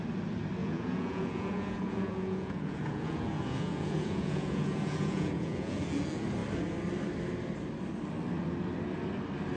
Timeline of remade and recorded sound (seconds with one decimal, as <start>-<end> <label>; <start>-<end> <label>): 0.0-0.6 recorded; 0.6-5.8 remade; 5.8-9.6 recorded